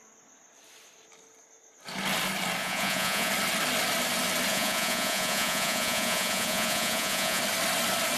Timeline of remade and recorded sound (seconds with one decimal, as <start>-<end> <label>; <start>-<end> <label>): 0.0-2.6 recorded; 2.6-3.3 remade; 3.3-4.5 recorded; 4.5-7.4 remade; 7.4-8.2 recorded